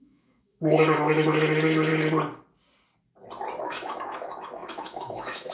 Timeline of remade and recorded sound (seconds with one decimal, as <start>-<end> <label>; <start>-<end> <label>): 0.0-1.9 remade; 1.9-3.6 recorded; 3.6-5.5 remade